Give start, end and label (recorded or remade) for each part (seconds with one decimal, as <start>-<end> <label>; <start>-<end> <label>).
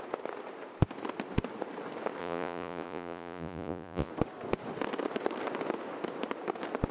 0.0-2.2 recorded; 2.2-4.1 remade; 4.1-6.9 recorded